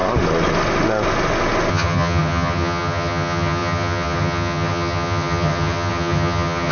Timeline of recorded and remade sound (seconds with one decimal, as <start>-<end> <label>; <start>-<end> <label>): 0.0-1.7 recorded; 1.7-6.7 remade